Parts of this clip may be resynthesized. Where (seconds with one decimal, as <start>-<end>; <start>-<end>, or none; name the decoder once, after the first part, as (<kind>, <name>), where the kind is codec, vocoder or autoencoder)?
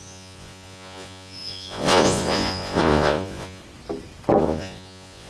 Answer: 0.0-3.6 (vocoder, Vocos); 4.4-5.3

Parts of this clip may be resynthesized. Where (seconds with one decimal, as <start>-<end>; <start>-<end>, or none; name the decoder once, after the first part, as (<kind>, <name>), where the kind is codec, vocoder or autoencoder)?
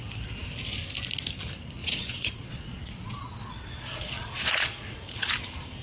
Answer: 1.8-5.3 (vocoder, Vocos)